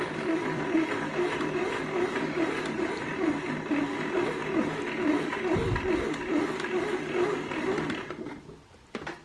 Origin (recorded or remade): remade